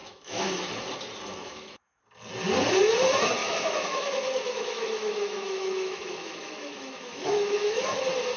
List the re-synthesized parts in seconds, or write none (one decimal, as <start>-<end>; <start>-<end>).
0.0-0.7; 1.4-2.0; 3.4-8.0